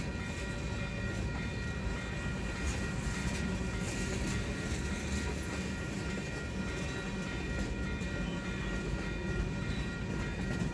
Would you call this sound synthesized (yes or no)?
no